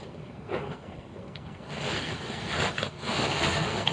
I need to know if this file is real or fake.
fake